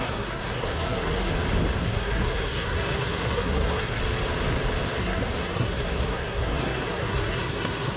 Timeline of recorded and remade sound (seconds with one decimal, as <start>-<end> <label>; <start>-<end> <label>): 0.0-1.3 remade; 1.3-1.8 recorded; 1.8-4.0 remade; 4.0-5.0 recorded; 5.0-8.0 remade